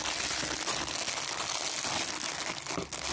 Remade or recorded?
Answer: recorded